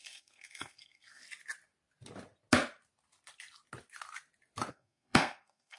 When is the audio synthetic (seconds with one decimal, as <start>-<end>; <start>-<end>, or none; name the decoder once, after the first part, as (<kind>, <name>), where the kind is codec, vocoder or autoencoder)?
0.0-1.2 (codec, SNAC); 4.7-5.8